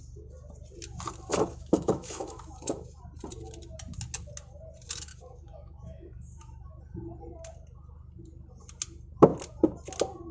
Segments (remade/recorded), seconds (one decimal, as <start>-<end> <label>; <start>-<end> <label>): 0.0-1.3 recorded; 1.3-3.0 remade; 3.0-5.1 recorded; 5.1-6.7 remade; 6.7-10.3 recorded